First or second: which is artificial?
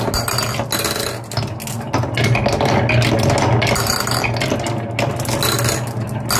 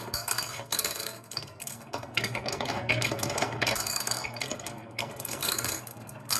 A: second